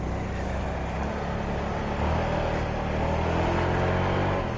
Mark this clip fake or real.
real